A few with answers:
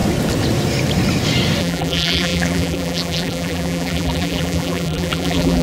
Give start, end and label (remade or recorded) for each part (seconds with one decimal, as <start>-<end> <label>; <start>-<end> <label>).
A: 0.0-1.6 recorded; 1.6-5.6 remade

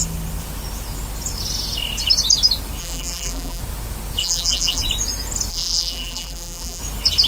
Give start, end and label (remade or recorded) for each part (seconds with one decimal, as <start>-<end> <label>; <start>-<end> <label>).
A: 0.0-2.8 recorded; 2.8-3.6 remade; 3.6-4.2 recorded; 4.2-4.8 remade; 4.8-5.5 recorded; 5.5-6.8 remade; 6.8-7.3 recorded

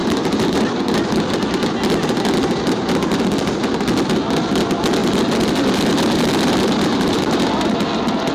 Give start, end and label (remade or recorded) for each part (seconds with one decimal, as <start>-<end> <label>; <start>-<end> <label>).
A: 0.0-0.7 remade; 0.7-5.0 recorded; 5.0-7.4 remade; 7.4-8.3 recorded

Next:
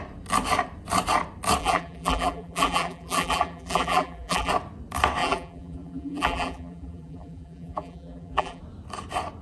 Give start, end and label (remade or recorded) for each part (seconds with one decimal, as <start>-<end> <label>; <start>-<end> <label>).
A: 0.0-1.6 recorded; 1.6-4.5 remade; 4.5-5.2 recorded; 5.2-8.6 remade; 8.6-9.4 recorded